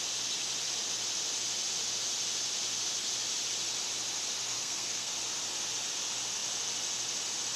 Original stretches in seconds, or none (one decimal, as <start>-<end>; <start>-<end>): 0.0-4.5; 5.1-7.6